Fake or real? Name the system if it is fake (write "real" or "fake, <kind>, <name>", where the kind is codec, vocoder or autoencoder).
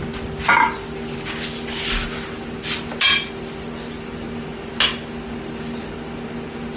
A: real